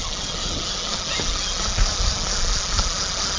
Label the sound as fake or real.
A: real